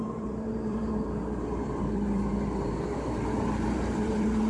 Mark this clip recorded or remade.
remade